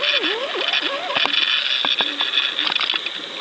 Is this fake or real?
real